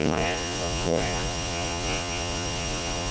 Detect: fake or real fake